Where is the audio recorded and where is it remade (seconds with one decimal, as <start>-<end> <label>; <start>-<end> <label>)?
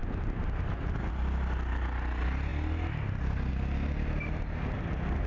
0.0-5.3 recorded